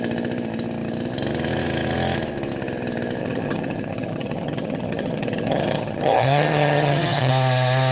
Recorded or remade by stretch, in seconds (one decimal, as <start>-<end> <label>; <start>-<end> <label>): 0.0-3.2 recorded; 3.2-7.3 remade; 7.3-7.9 recorded